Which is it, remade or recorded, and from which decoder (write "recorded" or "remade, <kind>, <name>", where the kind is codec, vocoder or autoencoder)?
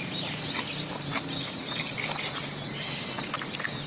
recorded